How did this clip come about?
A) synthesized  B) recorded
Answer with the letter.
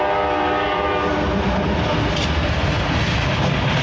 B